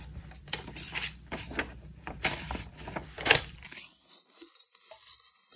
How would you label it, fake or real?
fake